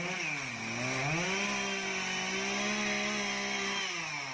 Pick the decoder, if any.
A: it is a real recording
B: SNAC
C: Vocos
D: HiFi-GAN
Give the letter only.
A